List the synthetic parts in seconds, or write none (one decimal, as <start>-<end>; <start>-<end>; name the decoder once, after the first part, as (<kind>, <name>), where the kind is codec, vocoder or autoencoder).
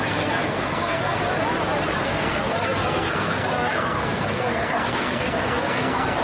0.0-1.2 (codec, SNAC); 2.0-6.2